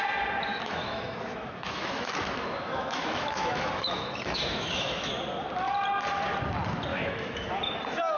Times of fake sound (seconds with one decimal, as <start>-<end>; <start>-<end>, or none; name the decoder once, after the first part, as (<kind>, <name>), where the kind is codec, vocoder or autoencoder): 0.5-5.1 (autoencoder, DAC-VAE); 6.9-7.5

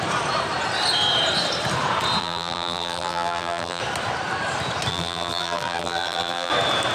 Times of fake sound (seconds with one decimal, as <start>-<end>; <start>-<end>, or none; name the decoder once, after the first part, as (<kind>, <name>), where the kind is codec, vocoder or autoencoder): 2.2-3.8 (vocoder, BigVGAN v2); 4.9-6.5

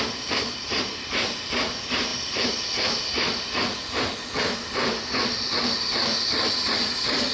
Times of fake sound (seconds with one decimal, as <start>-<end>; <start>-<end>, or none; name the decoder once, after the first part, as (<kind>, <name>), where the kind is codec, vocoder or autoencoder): none

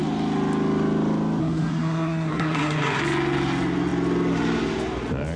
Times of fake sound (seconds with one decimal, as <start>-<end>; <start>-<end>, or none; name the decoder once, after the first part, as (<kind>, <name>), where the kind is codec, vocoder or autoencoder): 1.4-3.0 (codec, SNAC)